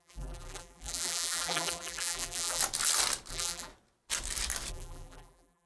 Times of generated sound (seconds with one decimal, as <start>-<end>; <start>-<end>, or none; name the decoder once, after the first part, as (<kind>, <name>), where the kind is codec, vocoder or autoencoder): 0.0-2.6 (vocoder, BigVGAN v2); 3.3-3.7; 4.7-5.7